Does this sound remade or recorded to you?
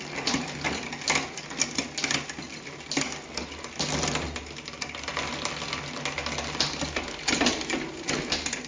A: recorded